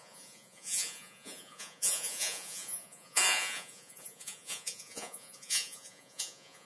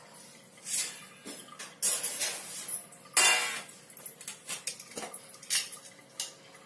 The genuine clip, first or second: second